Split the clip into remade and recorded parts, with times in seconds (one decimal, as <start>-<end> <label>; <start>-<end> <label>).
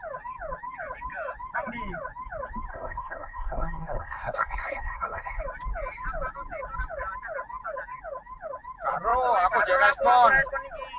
0.0-2.7 recorded; 2.7-5.4 remade; 5.4-11.0 recorded